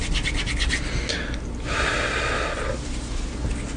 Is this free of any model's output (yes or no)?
yes